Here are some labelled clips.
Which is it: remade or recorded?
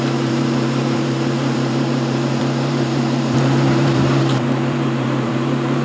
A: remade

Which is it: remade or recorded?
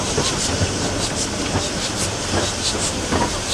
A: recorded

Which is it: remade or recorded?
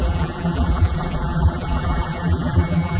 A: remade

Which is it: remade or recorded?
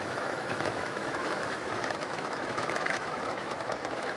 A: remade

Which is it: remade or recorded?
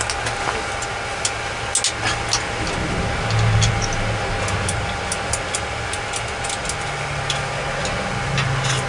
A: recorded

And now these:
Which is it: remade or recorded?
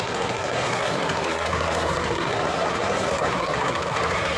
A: remade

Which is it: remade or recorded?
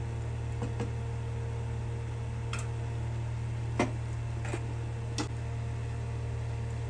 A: recorded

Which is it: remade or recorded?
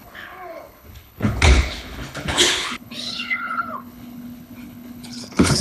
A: remade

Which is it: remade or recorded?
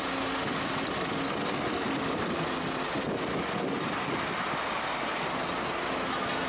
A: recorded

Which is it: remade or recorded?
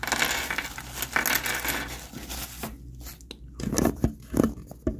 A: recorded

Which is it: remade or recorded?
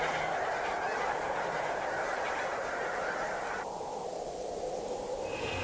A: remade